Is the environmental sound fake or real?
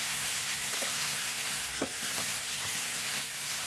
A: fake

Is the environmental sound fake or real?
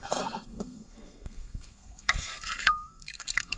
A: fake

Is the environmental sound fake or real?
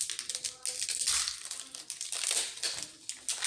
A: real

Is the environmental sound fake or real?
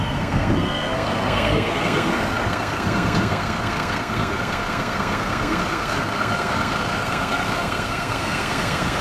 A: fake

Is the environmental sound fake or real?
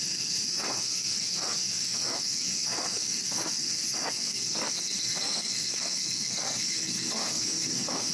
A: fake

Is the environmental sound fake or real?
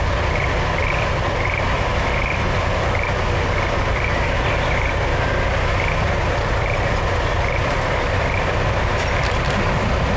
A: fake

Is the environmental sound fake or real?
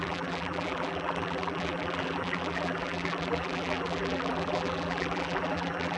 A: fake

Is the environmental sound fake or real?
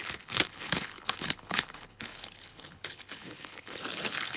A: fake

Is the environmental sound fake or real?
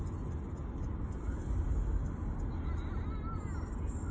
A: real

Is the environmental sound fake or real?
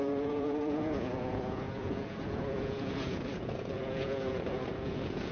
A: fake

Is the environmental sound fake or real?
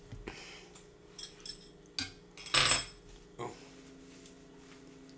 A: real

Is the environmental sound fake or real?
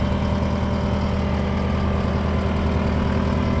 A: real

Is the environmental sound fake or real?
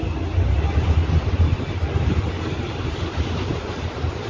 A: real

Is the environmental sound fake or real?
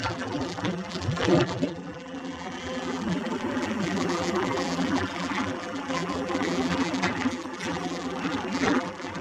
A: fake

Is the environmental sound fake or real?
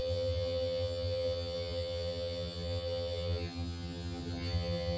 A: fake